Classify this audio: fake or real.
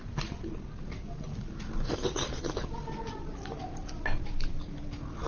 real